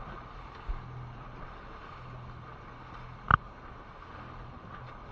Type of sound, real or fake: real